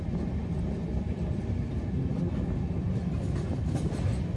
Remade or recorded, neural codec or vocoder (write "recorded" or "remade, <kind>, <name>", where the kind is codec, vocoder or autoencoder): recorded